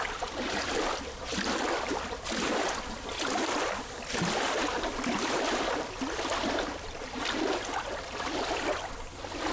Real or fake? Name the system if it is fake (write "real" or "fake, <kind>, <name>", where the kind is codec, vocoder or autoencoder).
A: real